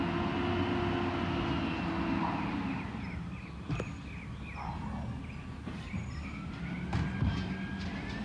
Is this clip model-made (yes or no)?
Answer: no